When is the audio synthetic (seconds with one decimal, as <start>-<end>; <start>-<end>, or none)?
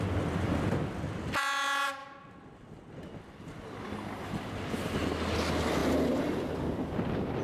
none